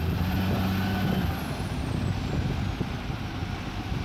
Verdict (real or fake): real